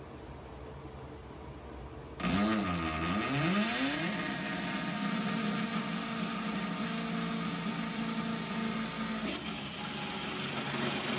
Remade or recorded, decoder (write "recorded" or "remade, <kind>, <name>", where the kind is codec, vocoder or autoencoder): recorded